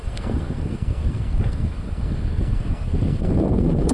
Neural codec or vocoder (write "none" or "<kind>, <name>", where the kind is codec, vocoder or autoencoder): codec, SNAC